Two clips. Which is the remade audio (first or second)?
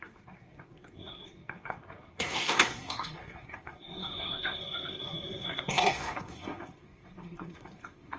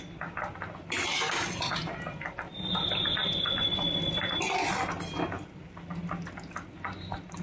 first